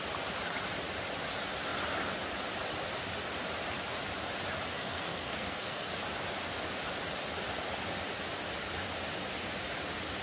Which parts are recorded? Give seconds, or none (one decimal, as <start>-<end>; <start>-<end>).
0.0-4.7; 5.9-10.2